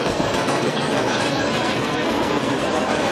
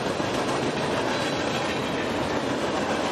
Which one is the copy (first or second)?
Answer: first